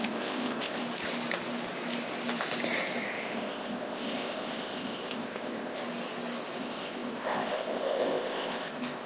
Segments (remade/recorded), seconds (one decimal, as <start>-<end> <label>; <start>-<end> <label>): 0.0-0.8 remade; 0.8-3.0 recorded; 3.0-5.8 remade; 5.8-6.6 recorded; 6.6-9.1 remade